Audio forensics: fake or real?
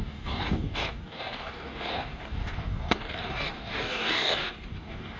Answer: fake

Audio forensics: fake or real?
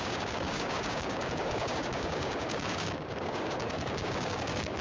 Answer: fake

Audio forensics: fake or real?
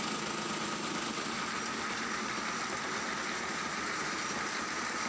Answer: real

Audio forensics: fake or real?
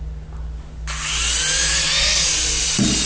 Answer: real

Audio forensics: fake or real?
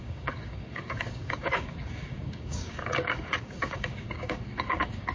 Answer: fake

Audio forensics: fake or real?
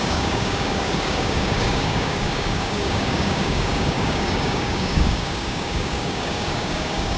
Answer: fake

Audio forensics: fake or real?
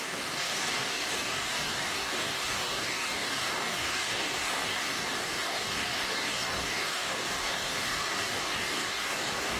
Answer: fake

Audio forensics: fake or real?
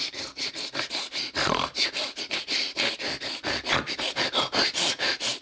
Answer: real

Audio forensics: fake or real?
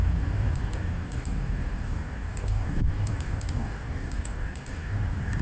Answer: fake